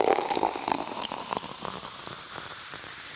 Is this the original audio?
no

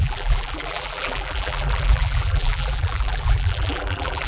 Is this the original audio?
no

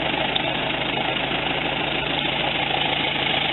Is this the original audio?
no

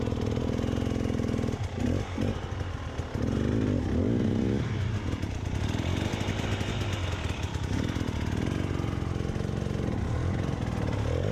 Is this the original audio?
yes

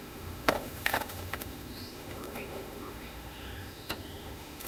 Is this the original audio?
no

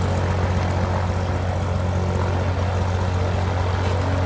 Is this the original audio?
yes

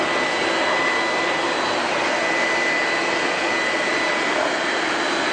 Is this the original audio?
yes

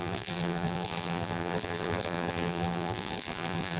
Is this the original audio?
no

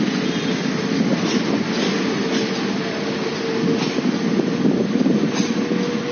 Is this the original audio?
yes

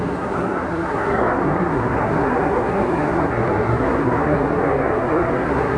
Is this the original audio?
no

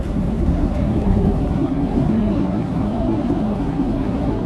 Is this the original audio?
no